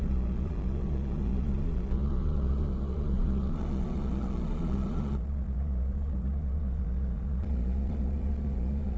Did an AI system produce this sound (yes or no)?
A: yes